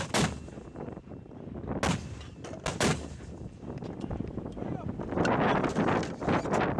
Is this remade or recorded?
recorded